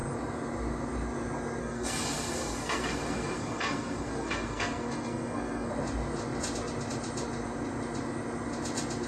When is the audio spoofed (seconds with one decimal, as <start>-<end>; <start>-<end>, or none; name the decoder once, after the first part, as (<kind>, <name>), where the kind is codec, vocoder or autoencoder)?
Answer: 1.6-5.7 (codec, SNAC)